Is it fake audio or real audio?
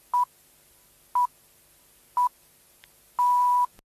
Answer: real